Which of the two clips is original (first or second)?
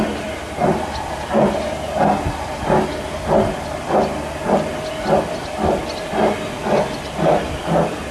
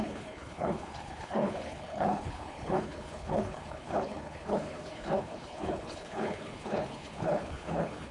first